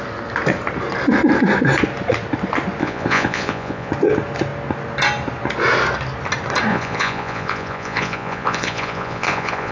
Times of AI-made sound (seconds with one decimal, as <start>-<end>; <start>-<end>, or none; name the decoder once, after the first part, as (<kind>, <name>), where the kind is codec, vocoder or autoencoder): 2.8-3.9 (vocoder, Vocos); 6.7-9.7